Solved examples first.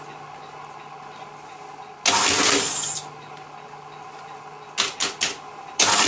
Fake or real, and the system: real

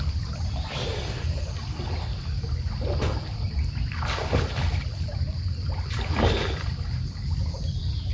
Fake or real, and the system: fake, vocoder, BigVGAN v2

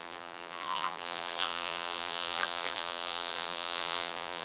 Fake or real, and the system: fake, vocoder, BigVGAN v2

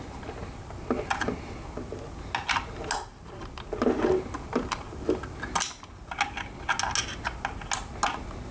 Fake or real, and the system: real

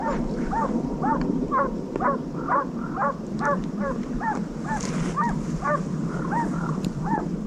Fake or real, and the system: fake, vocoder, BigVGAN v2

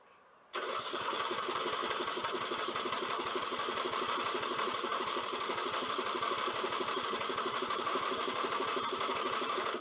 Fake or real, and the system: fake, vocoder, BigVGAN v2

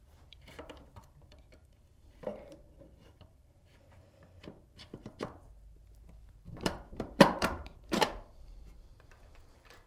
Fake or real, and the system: fake, vocoder, BigVGAN v2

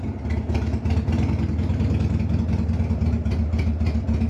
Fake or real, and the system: real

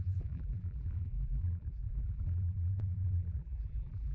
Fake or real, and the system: fake, vocoder, BigVGAN v2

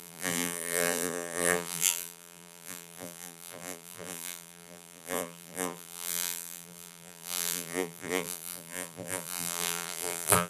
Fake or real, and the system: fake, vocoder, BigVGAN v2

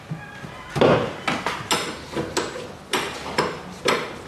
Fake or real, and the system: real